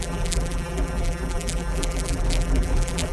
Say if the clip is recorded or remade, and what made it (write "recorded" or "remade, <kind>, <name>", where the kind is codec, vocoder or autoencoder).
remade, vocoder, BigVGAN v2